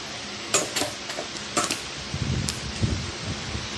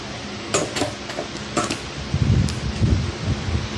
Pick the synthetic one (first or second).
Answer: first